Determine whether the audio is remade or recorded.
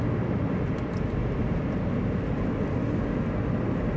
recorded